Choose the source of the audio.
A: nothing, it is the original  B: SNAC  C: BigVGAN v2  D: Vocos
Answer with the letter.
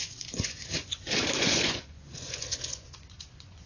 D